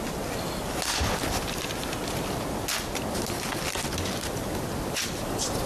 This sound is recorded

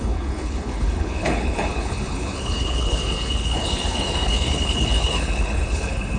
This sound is remade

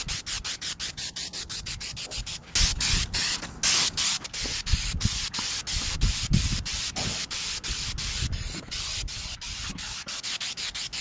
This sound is recorded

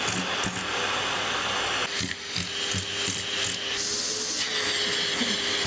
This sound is recorded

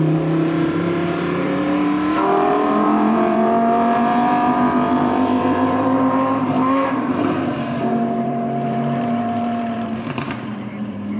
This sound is remade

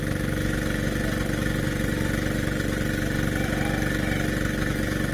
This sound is recorded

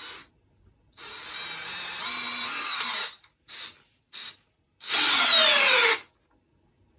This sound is recorded